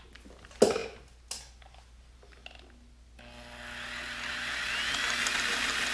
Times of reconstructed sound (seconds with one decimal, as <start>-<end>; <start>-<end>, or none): none